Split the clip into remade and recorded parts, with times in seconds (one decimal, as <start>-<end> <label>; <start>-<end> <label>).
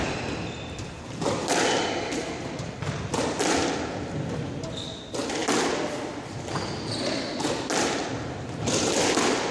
0.0-9.5 recorded